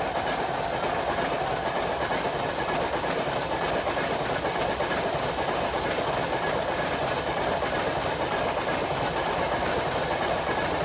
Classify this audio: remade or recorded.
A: recorded